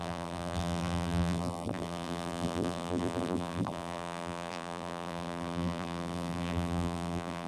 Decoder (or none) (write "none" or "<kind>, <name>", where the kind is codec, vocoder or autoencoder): vocoder, BigVGAN v2